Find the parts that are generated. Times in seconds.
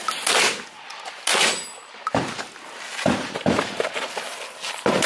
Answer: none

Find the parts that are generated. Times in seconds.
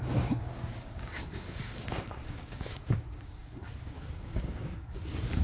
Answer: 0.0-5.4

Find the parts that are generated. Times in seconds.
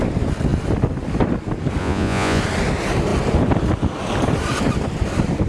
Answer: 1.8-2.4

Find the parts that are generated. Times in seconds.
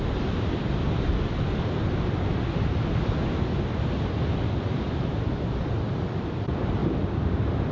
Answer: none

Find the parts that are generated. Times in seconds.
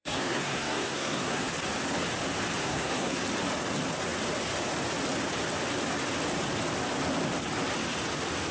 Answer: 0.0-1.5; 2.6-3.2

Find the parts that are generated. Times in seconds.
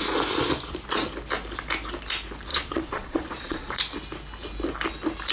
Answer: 2.5-3.8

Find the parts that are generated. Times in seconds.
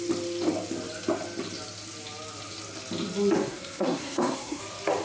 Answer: 3.4-4.6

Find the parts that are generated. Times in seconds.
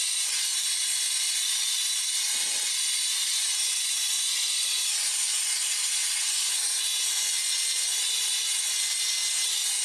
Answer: 3.2-4.2; 6.0-8.0